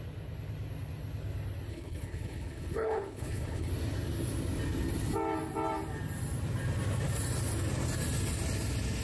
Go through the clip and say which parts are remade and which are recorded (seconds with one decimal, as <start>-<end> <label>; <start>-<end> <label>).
0.0-1.7 recorded; 1.7-3.7 remade; 3.7-9.0 recorded